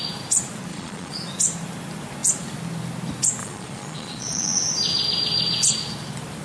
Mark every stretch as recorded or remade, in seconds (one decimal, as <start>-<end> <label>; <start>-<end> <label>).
0.0-0.7 recorded; 0.7-1.3 remade; 1.3-3.4 recorded; 3.4-4.6 remade; 4.6-6.4 recorded